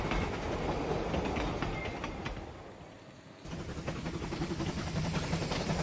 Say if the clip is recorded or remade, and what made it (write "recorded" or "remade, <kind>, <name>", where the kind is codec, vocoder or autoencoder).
recorded